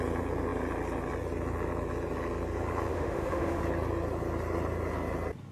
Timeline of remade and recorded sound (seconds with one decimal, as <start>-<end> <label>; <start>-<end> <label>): 0.0-2.9 recorded; 2.9-3.6 remade; 3.6-5.5 recorded